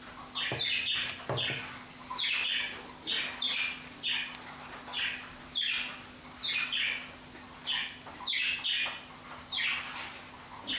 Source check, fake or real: real